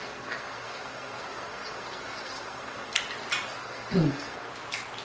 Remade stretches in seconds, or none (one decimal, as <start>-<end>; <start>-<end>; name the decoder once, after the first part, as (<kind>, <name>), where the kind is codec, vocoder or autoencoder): 0.0-3.0 (codec, SNAC); 3.6-4.5